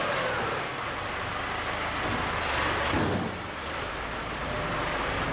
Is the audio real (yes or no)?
yes